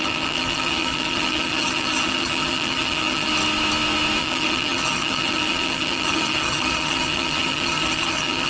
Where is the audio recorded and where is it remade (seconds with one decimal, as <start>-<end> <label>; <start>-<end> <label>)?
0.0-3.3 remade; 3.3-4.2 recorded; 4.2-8.5 remade